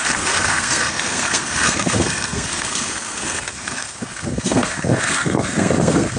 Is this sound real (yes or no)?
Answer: no